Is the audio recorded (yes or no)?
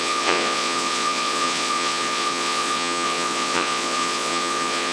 no